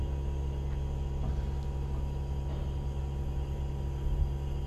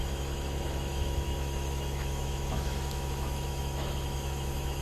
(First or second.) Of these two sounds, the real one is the first